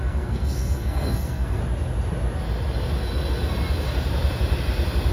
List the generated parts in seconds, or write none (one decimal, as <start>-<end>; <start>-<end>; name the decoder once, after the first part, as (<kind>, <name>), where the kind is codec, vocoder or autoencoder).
0.0-1.6 (codec, SNAC)